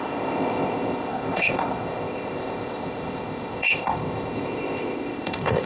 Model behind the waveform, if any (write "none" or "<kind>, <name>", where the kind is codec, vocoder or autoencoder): codec, ZipCodec